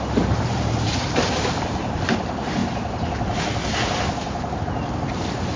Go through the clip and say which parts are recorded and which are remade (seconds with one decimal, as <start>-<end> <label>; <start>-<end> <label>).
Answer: 0.0-2.6 remade; 2.6-4.6 recorded; 4.6-5.6 remade